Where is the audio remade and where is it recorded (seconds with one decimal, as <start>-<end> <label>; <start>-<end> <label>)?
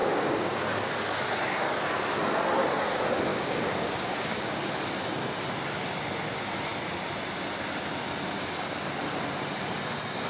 0.0-0.6 remade; 0.6-3.3 recorded; 3.3-4.6 remade; 4.6-10.3 recorded